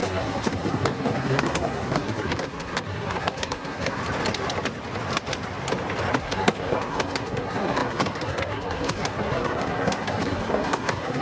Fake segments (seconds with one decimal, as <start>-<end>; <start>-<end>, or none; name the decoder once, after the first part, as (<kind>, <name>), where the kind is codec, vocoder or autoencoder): 0.0-4.0 (codec, SNAC); 6.2-11.2